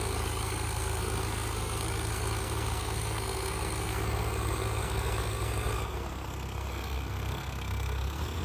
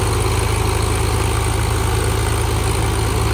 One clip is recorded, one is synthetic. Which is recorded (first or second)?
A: second